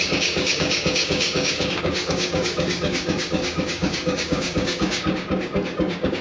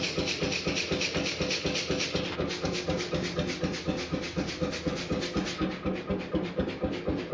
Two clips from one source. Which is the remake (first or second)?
first